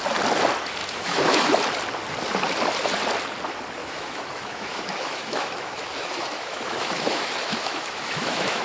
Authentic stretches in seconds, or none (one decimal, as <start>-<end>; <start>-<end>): 0.0-0.8; 1.5-3.8